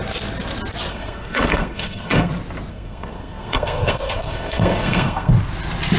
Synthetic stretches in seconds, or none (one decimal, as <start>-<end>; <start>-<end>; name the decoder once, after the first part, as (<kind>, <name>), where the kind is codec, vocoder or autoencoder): 0.9-2.3 (codec, SNAC); 2.7-5.3